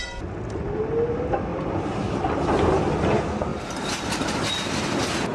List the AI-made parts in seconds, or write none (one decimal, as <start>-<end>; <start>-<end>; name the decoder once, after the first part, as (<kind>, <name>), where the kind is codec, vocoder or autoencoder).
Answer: 1.5-2.4 (vocoder, BigVGAN v2); 3.5-4.2